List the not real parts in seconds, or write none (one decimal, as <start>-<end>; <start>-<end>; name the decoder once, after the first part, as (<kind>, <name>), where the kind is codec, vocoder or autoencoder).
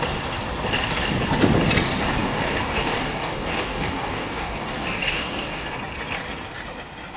2.2-5.8 (codec, DAC)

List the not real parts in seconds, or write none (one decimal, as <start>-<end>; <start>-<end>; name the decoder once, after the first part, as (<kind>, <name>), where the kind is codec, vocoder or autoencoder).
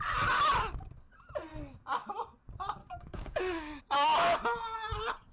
2.8-3.8 (codec, DAC)